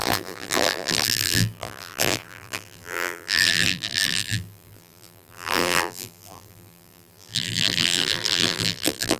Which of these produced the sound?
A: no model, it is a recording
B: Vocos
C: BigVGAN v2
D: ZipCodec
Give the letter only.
C